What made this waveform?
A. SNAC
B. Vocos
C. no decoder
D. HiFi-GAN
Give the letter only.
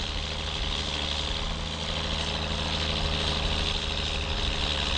C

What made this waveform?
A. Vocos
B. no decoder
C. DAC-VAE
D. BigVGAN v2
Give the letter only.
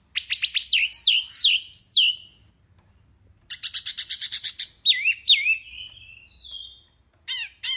B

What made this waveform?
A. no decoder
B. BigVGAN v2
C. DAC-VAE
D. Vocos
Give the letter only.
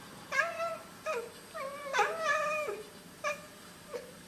B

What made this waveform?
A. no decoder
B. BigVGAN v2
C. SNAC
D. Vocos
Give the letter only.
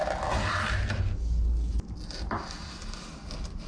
A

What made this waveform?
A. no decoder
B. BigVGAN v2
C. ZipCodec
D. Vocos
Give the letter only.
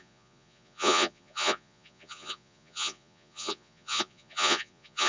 D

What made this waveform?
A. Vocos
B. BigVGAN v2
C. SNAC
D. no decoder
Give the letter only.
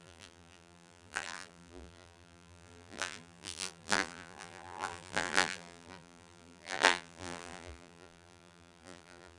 B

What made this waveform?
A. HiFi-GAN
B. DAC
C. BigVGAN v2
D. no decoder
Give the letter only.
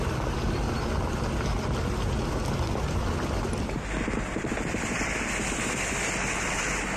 D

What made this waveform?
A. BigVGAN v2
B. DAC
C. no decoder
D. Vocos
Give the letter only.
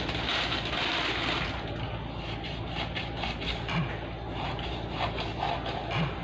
C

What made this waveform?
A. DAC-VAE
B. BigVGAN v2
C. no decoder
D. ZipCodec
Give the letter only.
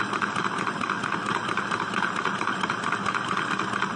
C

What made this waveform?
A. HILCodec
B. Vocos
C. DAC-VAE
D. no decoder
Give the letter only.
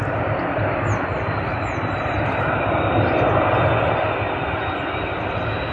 D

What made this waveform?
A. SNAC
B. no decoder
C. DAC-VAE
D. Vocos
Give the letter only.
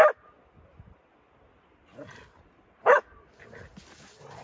B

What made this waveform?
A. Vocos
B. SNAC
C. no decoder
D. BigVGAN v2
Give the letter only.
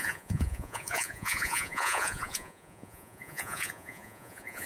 A